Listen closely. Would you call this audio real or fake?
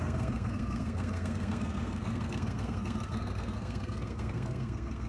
fake